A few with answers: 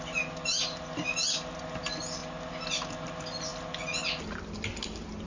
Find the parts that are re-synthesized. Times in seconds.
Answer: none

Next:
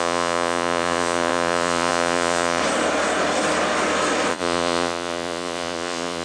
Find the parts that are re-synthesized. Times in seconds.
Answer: 0.0-2.6 (vocoder, Vocos); 4.3-6.2